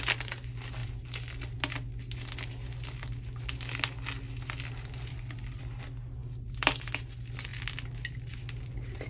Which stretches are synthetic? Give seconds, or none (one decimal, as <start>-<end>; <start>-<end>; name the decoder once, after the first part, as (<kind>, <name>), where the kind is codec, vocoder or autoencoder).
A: 5.1-5.6 (codec, HILCodec)